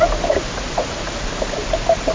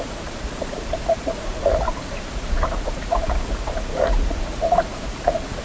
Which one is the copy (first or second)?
second